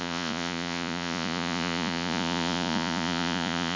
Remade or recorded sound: remade